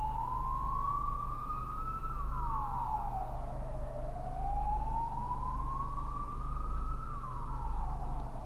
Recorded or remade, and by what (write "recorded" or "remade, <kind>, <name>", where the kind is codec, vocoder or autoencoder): remade, autoencoder, DAC-VAE